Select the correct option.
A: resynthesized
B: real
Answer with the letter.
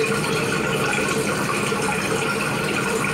B